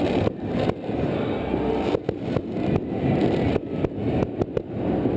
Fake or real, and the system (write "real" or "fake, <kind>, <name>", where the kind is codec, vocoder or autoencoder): real